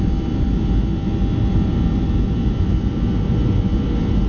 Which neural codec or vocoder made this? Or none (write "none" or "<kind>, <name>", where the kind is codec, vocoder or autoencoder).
none